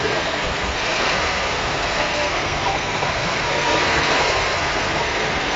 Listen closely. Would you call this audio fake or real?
fake